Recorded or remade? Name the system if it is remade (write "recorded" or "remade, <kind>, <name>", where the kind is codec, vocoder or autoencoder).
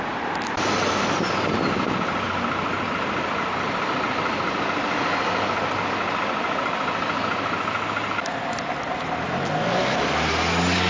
recorded